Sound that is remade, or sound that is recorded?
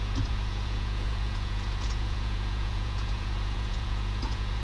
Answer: remade